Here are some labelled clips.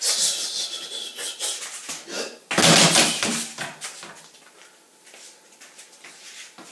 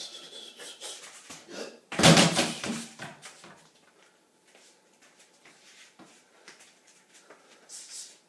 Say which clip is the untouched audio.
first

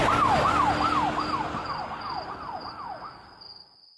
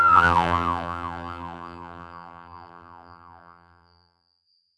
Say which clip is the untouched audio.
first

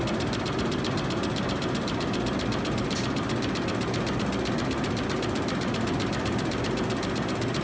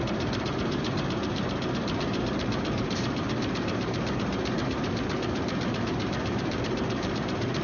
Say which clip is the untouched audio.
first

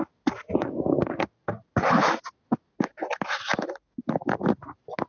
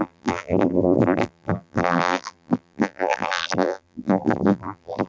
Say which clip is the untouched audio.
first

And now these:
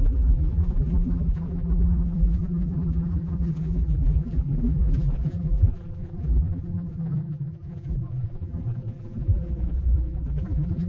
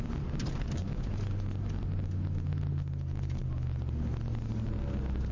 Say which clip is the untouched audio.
second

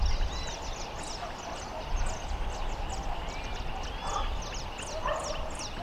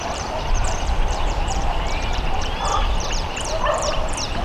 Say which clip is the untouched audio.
first